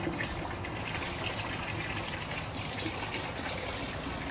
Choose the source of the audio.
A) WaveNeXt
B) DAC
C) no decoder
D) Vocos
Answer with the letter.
C